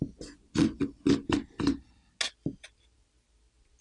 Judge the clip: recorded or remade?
recorded